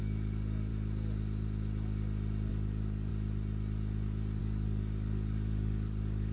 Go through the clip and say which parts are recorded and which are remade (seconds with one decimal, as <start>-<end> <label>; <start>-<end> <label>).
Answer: 0.0-0.7 remade; 0.7-2.5 recorded; 2.5-3.1 remade; 3.1-4.4 recorded; 4.4-6.3 remade